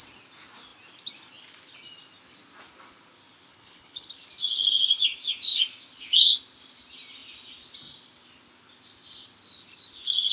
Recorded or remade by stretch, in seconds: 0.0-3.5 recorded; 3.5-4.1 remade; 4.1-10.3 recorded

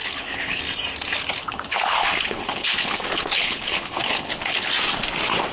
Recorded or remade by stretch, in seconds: 0.0-0.6 remade; 0.6-1.4 recorded; 1.4-4.7 remade; 4.7-5.5 recorded

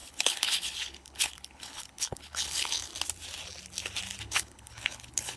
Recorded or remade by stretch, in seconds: 0.0-2.9 remade; 2.9-4.2 recorded; 4.2-5.4 remade